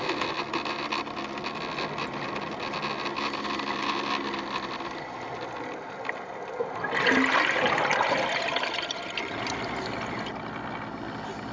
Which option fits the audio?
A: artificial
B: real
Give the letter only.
B